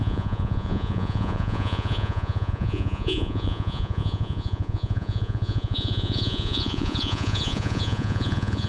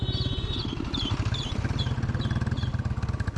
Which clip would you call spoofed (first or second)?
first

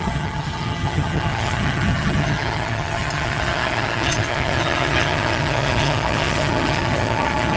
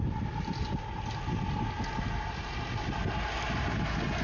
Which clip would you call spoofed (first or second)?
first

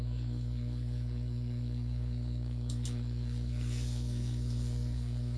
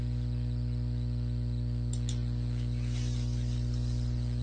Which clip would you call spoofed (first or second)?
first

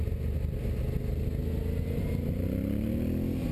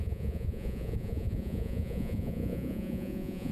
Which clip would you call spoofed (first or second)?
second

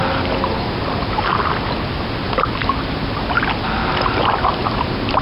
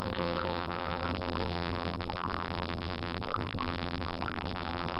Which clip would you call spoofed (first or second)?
second